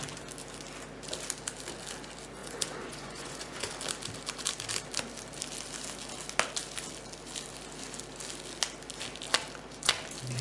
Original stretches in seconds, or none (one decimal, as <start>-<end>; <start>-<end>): 0.0-2.4; 3.7-10.4